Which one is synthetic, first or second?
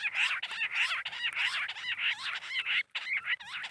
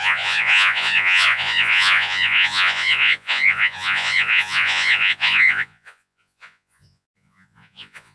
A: second